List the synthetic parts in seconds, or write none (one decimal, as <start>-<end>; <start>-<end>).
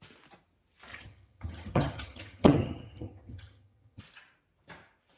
0.9-4.0